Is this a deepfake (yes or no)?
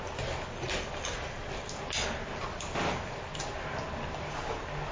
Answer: no